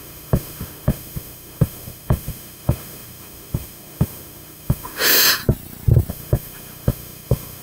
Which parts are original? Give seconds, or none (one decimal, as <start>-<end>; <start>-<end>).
5.4-6.1